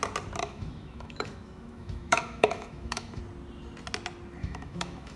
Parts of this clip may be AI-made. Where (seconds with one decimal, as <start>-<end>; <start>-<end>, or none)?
0.4-3.2; 4.4-5.2